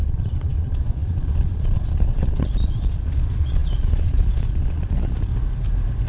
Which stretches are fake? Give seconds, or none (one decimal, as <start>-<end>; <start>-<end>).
0.0-5.3